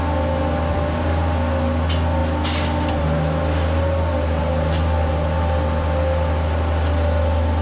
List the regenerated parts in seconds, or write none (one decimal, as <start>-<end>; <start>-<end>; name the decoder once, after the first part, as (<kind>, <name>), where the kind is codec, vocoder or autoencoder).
none